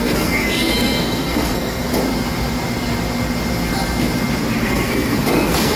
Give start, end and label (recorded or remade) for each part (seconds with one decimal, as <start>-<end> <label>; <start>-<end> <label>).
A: 0.0-1.9 remade; 1.9-4.6 recorded; 4.6-5.8 remade